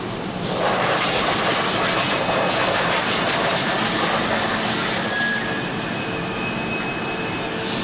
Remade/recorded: recorded